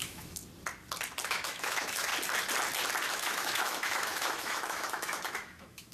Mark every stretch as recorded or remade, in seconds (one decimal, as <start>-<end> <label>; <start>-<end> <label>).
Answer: 0.0-0.4 remade; 0.4-1.2 recorded; 1.2-2.1 remade; 2.1-3.1 recorded; 3.1-5.9 remade

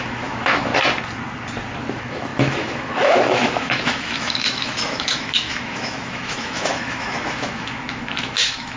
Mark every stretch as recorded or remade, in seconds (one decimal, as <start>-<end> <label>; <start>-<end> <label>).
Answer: 0.0-0.7 remade; 0.7-1.9 recorded; 1.9-8.8 remade

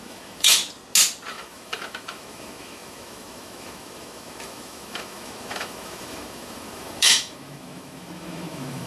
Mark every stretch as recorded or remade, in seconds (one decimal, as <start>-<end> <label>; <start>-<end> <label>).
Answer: 0.0-0.6 remade; 0.6-1.3 recorded; 1.3-8.9 remade